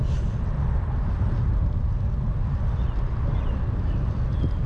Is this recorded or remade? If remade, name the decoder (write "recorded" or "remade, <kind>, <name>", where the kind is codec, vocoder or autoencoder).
recorded